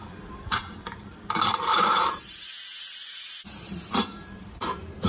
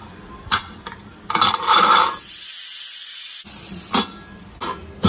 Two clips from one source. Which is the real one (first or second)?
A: second